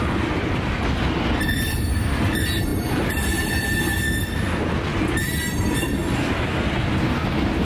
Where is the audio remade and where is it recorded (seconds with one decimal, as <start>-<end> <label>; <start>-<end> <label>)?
0.0-2.7 recorded; 2.7-3.8 remade; 3.8-4.9 recorded; 4.9-6.1 remade; 6.1-7.6 recorded